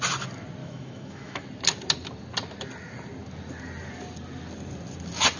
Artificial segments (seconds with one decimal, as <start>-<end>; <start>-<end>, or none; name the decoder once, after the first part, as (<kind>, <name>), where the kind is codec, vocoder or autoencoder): 0.6-1.4 (autoencoder, DAC-VAE)